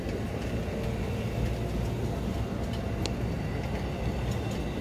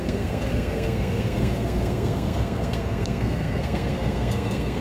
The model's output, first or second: second